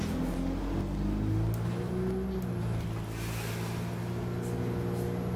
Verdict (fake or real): real